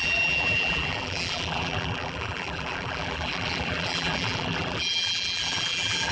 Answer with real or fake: fake